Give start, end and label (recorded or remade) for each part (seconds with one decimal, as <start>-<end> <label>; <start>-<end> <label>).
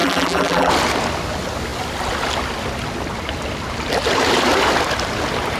0.0-0.7 remade; 0.7-5.6 recorded